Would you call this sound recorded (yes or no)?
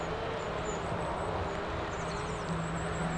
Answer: yes